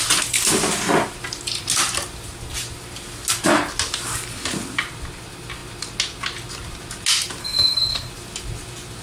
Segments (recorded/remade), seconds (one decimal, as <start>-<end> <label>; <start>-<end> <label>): 0.0-7.4 recorded; 7.4-8.1 remade; 8.1-9.0 recorded